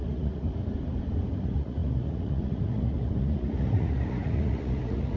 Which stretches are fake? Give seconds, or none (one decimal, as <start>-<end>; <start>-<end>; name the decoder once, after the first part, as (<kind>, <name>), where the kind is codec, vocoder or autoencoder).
0.0-0.6 (vocoder, Vocos); 1.4-5.2